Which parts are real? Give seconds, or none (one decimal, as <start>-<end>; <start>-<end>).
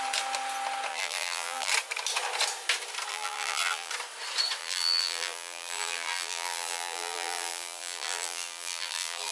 0.0-0.9; 1.7-3.1; 3.9-4.6